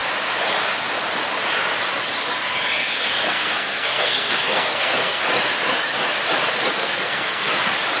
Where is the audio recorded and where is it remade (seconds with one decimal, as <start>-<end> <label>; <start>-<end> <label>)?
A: 0.0-2.8 recorded; 2.8-5.2 remade; 5.2-6.8 recorded; 6.8-7.5 remade; 7.5-8.0 recorded